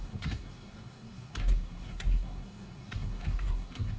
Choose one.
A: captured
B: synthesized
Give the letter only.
B